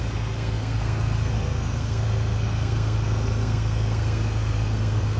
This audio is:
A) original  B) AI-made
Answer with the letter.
B